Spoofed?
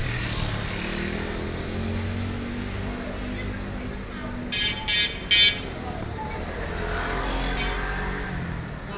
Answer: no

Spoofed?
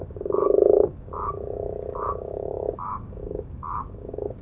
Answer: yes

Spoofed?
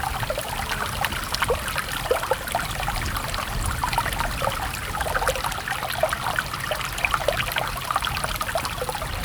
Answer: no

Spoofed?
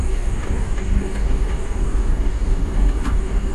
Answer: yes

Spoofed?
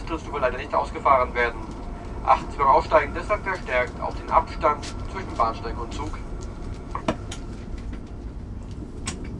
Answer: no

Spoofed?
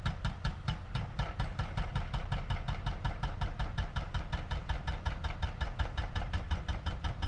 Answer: no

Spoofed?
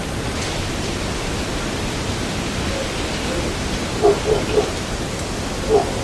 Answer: no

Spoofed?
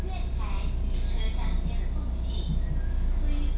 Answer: no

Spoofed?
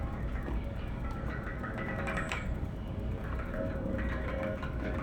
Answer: yes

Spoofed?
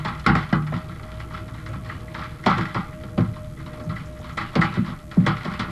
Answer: no